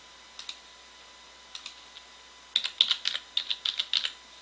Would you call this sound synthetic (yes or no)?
no